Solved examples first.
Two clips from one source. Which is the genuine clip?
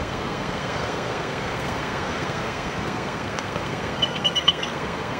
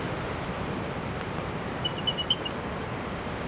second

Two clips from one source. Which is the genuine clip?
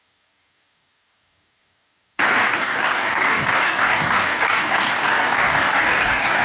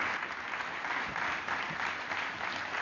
second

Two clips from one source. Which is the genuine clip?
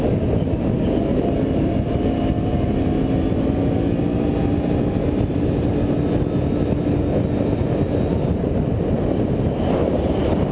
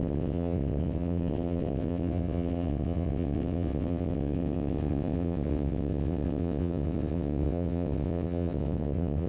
first